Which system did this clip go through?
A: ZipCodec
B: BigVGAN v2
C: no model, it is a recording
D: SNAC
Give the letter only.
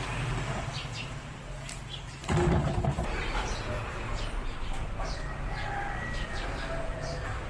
C